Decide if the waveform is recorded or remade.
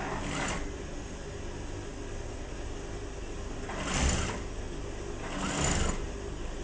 recorded